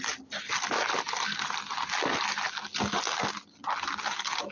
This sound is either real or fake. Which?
real